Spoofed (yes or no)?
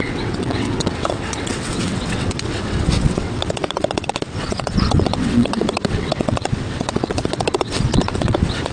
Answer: yes